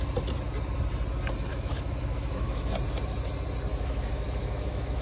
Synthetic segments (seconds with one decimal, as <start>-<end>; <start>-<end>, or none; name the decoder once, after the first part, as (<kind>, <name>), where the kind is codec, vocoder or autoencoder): 1.5-2.7 (autoencoder, DAC-VAE); 3.7-5.0